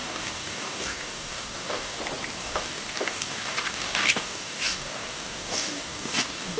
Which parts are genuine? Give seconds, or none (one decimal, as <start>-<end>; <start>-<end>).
2.0-2.4